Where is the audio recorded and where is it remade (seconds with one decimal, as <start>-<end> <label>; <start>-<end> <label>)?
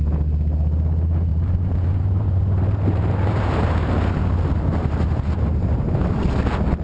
0.0-1.3 recorded; 1.3-4.1 remade; 4.1-4.7 recorded; 4.7-6.2 remade; 6.2-6.8 recorded